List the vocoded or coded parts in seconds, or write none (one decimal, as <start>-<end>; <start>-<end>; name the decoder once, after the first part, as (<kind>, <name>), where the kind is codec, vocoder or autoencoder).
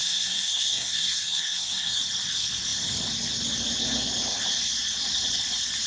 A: 0.0-2.0 (codec, SNAC)